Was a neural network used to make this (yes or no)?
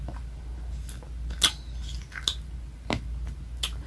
no